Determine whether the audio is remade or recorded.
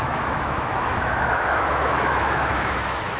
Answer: remade